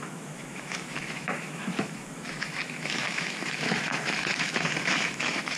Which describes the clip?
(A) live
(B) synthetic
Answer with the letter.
B